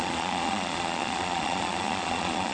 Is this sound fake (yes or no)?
yes